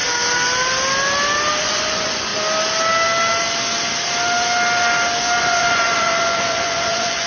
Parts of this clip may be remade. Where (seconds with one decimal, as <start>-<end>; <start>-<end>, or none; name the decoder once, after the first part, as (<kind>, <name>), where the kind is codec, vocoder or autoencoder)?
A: 1.6-2.3 (vocoder, Vocos); 5.4-7.3